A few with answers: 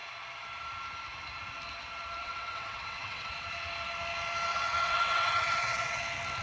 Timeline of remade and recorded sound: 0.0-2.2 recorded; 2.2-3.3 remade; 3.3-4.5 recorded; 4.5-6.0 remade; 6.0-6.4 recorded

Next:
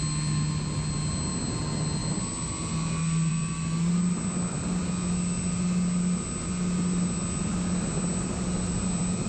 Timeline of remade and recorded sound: 0.0-9.3 recorded